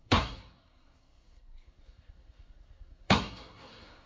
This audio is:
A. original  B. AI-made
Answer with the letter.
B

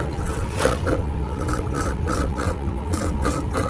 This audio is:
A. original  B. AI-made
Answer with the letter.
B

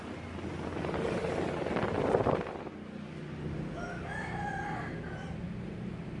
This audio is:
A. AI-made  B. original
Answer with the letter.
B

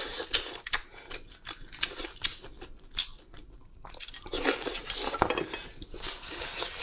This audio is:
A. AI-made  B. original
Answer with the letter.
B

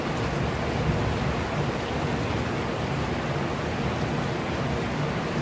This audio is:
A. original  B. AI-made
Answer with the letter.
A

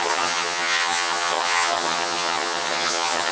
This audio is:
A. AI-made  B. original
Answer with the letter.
A